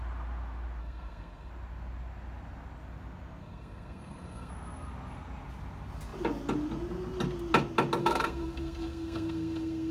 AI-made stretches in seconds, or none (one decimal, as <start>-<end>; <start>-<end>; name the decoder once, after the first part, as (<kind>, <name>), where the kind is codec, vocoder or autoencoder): 0.8-1.5 (codec, SNAC); 3.4-4.5; 8.0-9.9